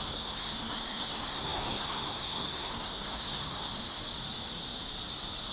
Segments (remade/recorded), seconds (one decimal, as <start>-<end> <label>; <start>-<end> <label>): 0.0-4.1 remade; 4.1-5.5 recorded